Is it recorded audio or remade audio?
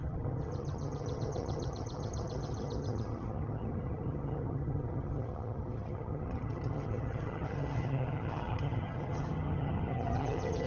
remade